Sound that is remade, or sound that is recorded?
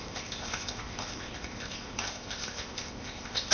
remade